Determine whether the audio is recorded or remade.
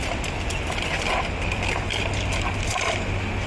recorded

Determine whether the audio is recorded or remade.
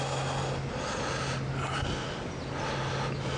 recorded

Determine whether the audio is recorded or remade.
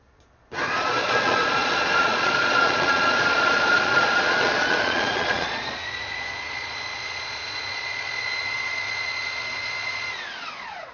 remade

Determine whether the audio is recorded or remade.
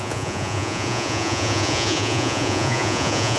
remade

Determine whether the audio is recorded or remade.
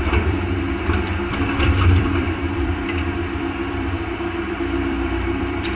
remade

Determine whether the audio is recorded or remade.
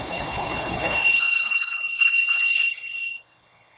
remade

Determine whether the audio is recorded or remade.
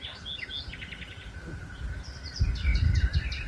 recorded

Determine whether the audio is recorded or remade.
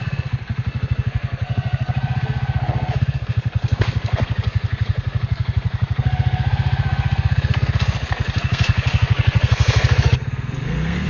remade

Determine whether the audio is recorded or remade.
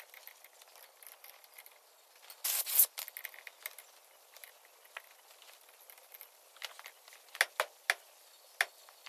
recorded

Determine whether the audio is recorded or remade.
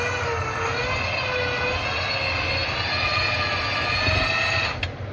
recorded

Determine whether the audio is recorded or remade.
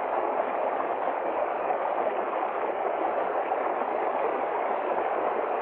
remade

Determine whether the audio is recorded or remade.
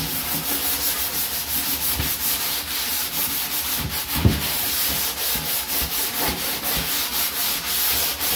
remade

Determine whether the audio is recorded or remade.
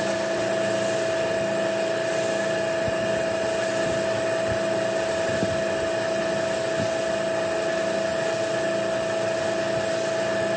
recorded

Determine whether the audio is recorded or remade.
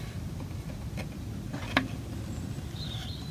recorded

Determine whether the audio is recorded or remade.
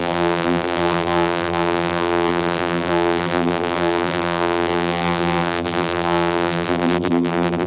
remade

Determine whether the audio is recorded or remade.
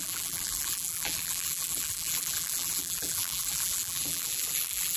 remade